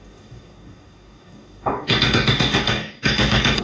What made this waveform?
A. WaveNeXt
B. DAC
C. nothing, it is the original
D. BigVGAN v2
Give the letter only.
B